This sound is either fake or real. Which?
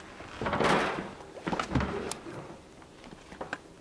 real